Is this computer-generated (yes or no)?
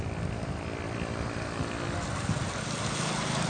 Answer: no